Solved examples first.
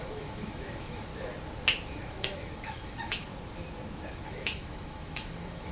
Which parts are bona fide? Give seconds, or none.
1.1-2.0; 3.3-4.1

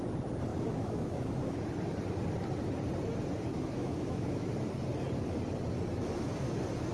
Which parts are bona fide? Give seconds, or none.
0.0-0.5; 1.7-3.5; 4.5-6.9

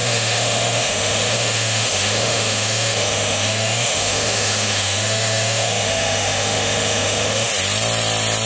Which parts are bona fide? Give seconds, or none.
7.5-8.5

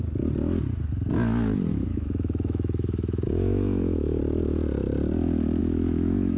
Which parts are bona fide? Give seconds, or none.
0.0-1.7; 4.2-5.6

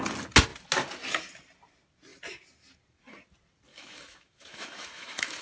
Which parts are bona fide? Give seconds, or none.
0.0-3.7

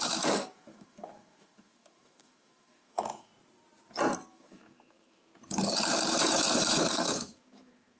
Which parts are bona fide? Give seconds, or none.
3.3-4.3; 5.3-6.2